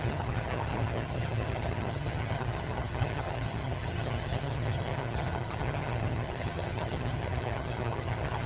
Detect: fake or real fake